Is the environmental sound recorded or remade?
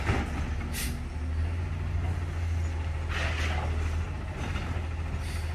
recorded